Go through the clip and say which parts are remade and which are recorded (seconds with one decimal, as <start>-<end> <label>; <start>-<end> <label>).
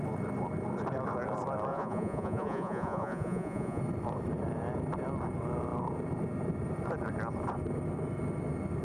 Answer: 0.0-1.7 recorded; 1.7-3.8 remade; 3.8-8.8 recorded